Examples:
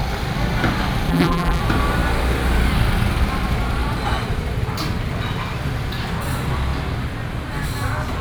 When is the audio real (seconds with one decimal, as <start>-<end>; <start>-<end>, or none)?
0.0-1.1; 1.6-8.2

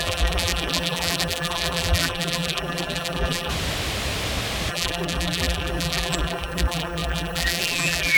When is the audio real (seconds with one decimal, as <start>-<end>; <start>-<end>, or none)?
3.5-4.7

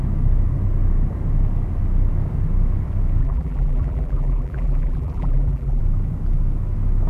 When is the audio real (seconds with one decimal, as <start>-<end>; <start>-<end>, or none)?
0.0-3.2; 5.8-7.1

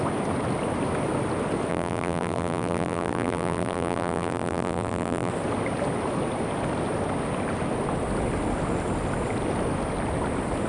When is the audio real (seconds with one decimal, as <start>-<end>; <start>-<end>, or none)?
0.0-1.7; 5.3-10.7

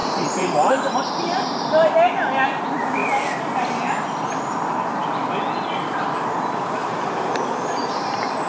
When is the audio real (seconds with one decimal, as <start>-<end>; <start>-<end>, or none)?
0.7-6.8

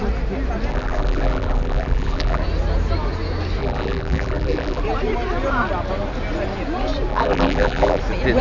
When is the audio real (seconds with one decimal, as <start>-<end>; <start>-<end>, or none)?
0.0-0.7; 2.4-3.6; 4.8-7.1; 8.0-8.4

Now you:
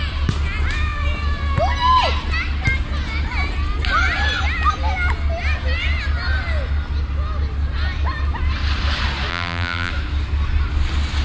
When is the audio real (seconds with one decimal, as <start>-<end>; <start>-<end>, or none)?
0.0-9.3; 9.9-11.2